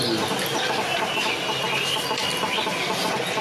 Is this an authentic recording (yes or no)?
yes